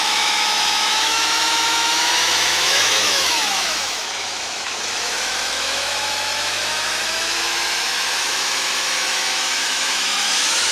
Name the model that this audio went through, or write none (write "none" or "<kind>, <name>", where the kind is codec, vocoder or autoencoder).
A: autoencoder, DAC-VAE